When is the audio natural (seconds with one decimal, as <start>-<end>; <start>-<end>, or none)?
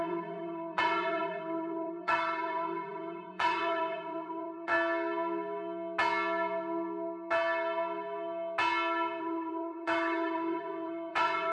4.7-9.2